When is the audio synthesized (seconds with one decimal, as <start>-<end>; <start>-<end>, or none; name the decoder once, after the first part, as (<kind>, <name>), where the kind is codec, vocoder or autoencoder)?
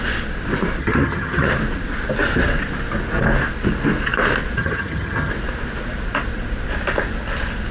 0.8-1.5 (vocoder, HiFi-GAN); 4.6-5.3